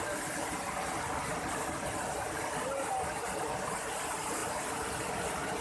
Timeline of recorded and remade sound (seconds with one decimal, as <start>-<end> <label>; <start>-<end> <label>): 0.0-5.6 recorded